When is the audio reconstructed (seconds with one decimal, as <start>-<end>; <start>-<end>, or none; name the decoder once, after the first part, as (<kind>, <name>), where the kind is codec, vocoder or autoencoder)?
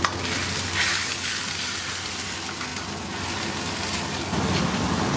0.9-1.4 (codec, HILCodec)